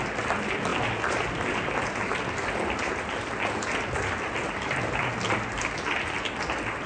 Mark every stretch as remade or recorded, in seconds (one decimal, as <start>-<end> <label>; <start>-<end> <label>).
0.0-6.9 recorded